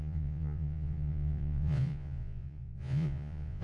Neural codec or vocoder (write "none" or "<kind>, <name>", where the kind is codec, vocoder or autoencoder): vocoder, Vocos